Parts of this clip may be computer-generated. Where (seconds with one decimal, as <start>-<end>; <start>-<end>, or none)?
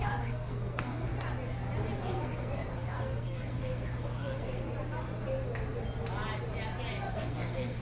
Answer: 0.0-1.1; 2.0-4.7; 7.1-7.8